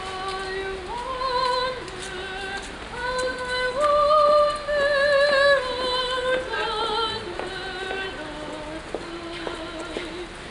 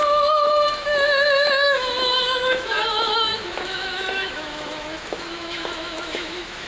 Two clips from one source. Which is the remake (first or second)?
second